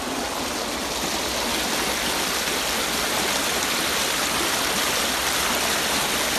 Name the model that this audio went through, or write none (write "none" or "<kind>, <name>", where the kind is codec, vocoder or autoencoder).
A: none